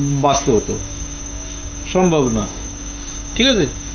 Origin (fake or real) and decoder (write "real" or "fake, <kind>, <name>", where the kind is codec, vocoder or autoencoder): fake, codec, DAC